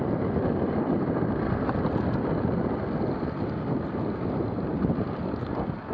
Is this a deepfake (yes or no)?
no